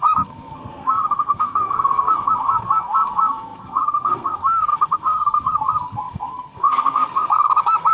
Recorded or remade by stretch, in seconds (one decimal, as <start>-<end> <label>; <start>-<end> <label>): 0.0-7.9 remade